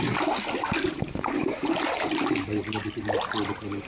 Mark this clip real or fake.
real